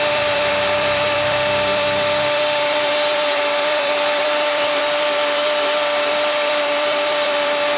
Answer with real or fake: fake